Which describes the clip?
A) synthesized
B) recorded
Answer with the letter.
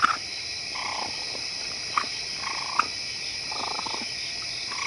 B